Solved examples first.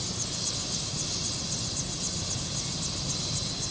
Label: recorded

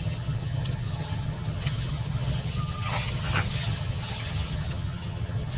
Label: remade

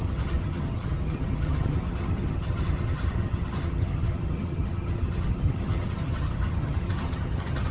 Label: remade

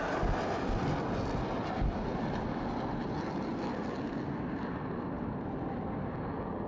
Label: recorded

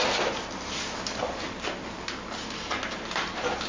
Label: recorded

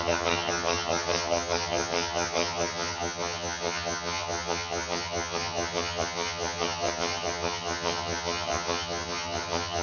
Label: remade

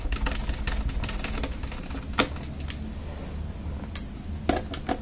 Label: recorded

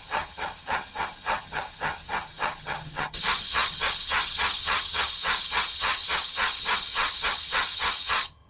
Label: remade